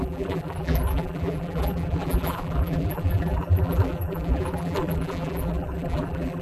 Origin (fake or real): fake